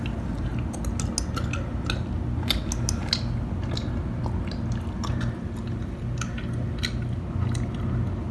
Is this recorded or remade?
recorded